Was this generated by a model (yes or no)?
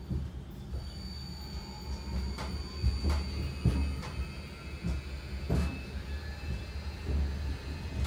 no